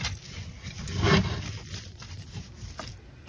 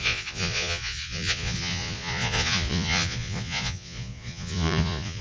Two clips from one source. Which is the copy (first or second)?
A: second